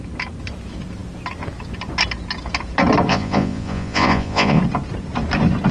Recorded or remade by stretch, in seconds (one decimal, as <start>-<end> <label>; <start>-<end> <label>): 0.0-3.1 recorded; 3.1-4.6 remade; 4.6-5.7 recorded